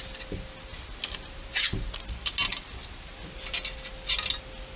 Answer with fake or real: real